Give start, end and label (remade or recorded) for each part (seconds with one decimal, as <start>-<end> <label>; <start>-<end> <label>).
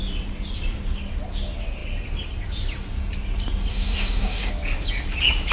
0.0-3.7 recorded; 3.7-4.5 remade; 4.5-5.5 recorded